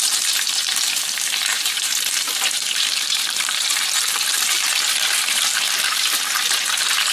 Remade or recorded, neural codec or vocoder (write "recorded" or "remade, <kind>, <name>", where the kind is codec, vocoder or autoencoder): remade, vocoder, BigVGAN v2